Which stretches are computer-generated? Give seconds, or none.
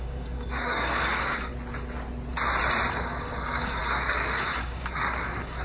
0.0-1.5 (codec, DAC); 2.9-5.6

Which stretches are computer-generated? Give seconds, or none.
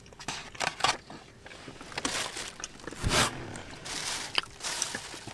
0.0-0.4 (codec, DAC); 3.2-3.6